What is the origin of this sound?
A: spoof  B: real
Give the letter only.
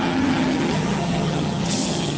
A